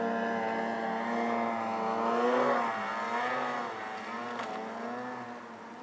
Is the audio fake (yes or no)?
no